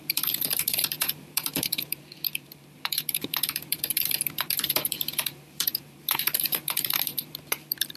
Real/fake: fake